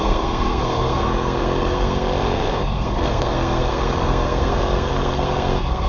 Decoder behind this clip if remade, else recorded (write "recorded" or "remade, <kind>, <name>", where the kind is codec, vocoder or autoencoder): remade, codec, SNAC